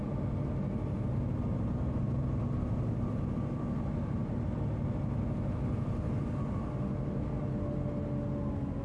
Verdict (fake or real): real